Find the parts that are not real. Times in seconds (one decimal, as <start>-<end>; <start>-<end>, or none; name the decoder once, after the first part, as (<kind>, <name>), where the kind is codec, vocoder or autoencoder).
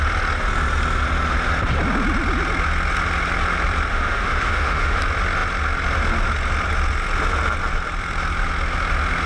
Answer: 3.9-5.0 (autoencoder, DAC-VAE)